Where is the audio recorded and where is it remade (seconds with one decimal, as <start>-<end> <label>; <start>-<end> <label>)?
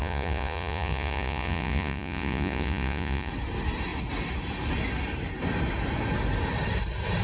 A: 0.0-3.3 remade; 3.3-7.2 recorded